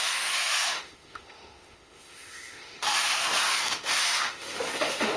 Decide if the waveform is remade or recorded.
remade